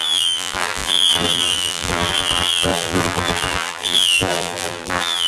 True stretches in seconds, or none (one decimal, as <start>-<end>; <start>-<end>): none